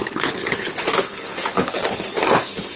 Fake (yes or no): yes